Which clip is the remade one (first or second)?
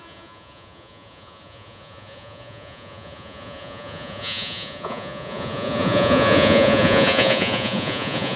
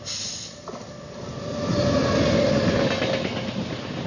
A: first